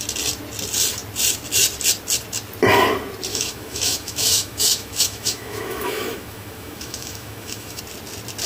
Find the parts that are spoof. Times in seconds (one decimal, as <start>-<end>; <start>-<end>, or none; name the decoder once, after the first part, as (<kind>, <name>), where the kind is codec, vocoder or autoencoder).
3.3-7.8 (autoencoder, DAC-VAE)